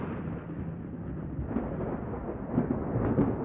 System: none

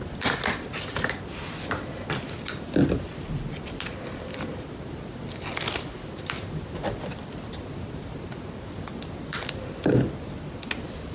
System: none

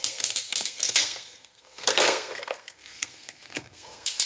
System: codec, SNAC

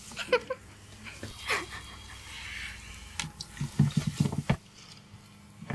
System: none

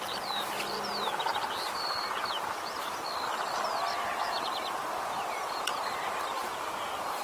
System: none